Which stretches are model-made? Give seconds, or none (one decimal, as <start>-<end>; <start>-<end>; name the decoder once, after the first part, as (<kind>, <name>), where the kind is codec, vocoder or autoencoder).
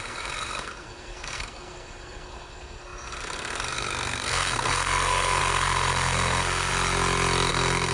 0.0-6.7 (codec, SNAC); 7.5-7.9